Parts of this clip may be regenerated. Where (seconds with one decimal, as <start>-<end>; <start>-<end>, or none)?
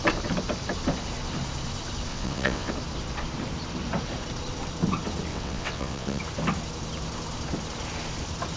2.1-2.7; 5.3-6.2